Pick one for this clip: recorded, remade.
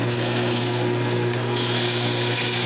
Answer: remade